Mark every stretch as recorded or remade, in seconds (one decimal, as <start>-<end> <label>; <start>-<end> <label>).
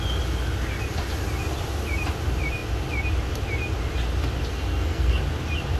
0.0-4.5 recorded; 4.5-5.2 remade; 5.2-5.8 recorded